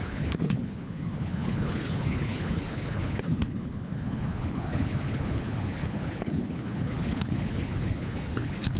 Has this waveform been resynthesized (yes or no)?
yes